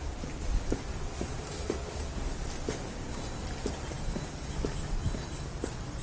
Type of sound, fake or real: real